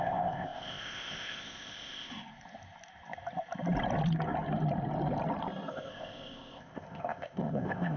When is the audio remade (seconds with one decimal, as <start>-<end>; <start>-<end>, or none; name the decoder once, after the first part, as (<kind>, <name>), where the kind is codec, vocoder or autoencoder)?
0.0-2.1 (codec, ZipCodec); 5.7-8.0